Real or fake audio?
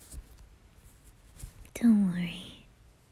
fake